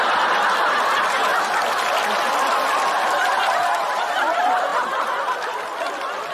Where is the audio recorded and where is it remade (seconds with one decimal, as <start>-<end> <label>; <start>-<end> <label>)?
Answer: 0.0-6.3 recorded